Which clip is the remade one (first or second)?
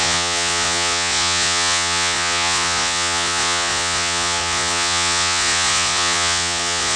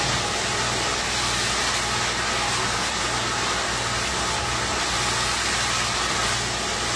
first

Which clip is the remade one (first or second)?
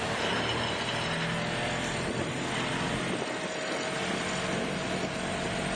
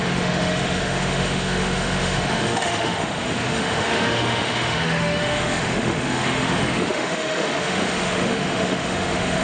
second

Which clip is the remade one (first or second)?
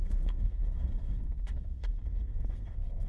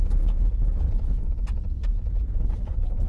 first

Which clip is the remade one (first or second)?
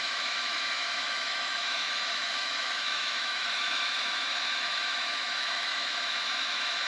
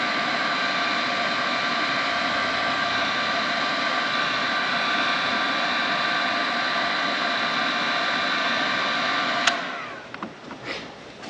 first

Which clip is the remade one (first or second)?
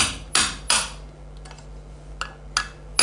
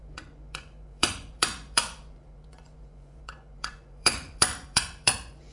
second